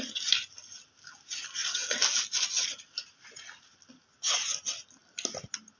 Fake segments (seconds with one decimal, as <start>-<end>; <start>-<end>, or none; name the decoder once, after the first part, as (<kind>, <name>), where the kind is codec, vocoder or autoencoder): none